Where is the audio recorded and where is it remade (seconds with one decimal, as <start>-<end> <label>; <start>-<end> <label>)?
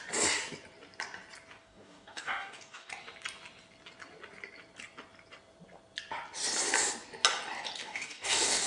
0.0-1.6 recorded; 1.6-2.9 remade; 2.9-7.8 recorded; 7.8-8.7 remade